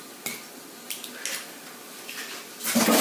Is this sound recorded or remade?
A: recorded